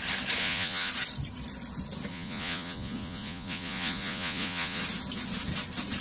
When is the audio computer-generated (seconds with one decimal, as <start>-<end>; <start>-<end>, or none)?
0.4-0.9; 2.1-4.8